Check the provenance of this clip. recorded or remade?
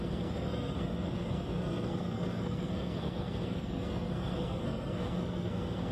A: remade